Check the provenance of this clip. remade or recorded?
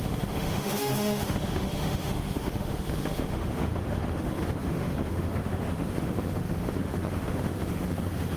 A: remade